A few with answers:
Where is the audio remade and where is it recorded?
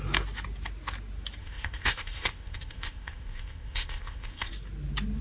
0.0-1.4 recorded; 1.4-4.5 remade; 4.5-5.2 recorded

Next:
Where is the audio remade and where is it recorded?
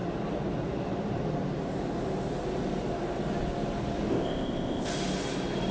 0.0-4.1 recorded; 4.1-4.9 remade; 4.9-5.7 recorded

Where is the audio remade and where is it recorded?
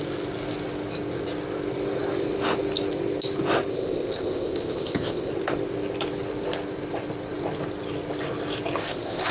0.0-3.7 recorded; 3.7-5.3 remade; 5.3-8.8 recorded; 8.8-9.3 remade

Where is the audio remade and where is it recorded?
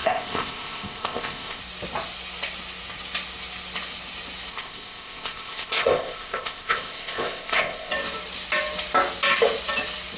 0.0-1.6 remade; 1.6-4.5 recorded; 4.5-7.9 remade; 7.9-10.2 recorded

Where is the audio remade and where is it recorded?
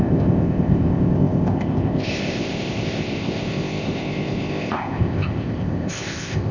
0.0-6.5 remade